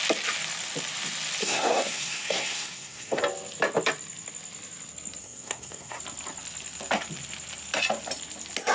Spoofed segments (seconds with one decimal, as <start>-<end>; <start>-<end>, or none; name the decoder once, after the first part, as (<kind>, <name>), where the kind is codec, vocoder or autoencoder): 1.4-3.2 (codec, SNAC); 5.2-6.0